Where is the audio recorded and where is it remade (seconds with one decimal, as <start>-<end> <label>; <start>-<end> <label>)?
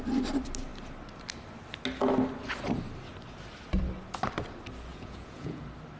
0.0-4.9 recorded; 4.9-5.6 remade; 5.6-6.0 recorded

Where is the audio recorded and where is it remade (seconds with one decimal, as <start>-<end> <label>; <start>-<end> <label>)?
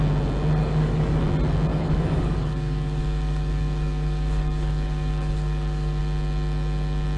0.0-0.6 recorded; 0.6-1.2 remade; 1.2-1.7 recorded; 1.7-6.0 remade; 6.0-7.2 recorded